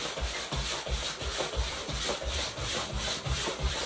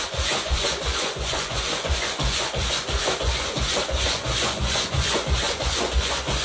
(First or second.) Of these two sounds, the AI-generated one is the second